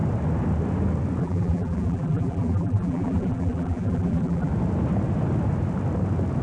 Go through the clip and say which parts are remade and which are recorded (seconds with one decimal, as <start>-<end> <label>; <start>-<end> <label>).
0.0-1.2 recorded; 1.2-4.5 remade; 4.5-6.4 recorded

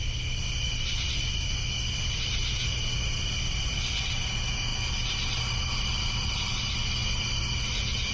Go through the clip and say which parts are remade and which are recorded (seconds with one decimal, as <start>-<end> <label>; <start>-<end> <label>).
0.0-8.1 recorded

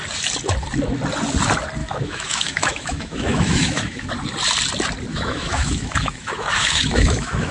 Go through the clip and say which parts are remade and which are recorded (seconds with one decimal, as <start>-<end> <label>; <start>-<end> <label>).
0.0-1.8 recorded; 1.8-4.1 remade; 4.1-5.1 recorded; 5.1-7.5 remade